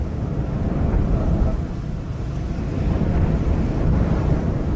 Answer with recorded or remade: remade